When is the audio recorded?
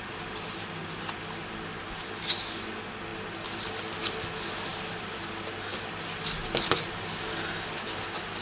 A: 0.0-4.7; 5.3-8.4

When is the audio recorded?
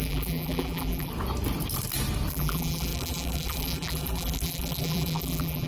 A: 1.1-2.3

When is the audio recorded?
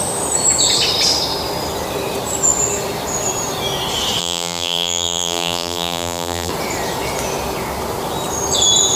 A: 0.0-4.2; 6.5-9.0